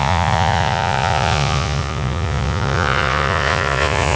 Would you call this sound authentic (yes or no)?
no